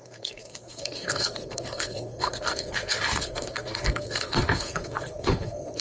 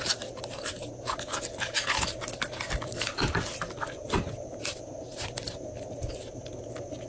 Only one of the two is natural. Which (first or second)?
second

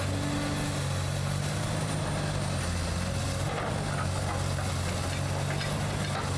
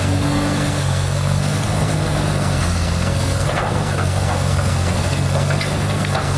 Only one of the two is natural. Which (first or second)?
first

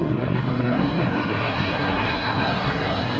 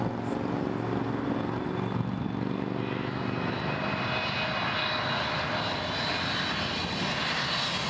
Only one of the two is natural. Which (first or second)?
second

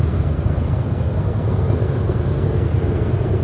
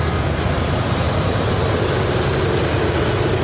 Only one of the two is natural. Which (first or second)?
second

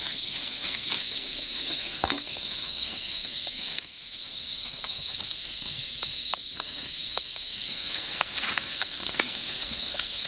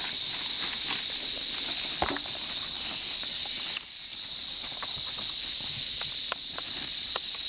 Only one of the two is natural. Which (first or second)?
second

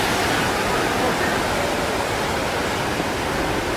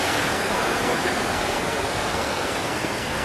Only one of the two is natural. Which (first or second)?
first